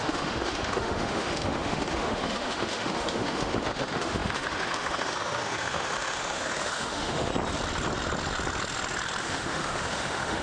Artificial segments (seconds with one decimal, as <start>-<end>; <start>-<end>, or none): 0.0-7.3; 9.2-10.4